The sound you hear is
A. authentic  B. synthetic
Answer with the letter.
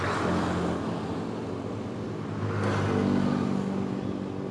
A